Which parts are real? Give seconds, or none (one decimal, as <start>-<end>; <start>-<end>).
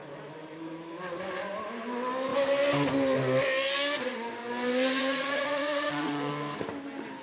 0.0-5.0; 6.3-7.2